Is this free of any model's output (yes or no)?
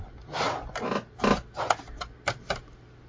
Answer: yes